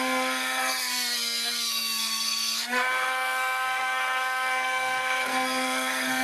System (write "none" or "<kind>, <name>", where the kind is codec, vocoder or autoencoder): codec, SNAC